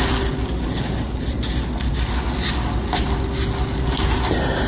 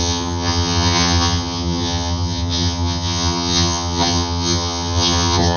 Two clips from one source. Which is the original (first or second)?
first